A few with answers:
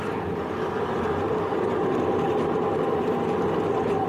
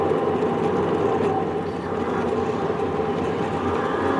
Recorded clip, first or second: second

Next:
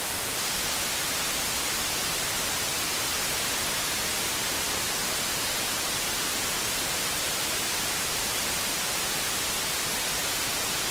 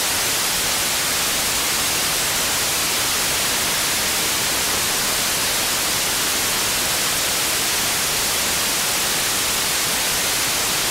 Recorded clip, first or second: second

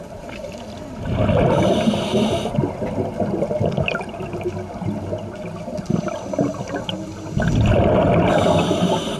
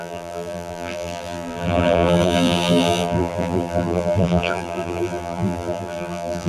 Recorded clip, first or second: first